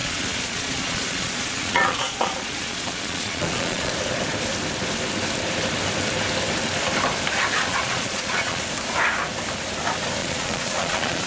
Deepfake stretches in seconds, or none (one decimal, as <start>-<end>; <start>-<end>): 0.0-3.9; 7.7-8.6; 10.2-11.3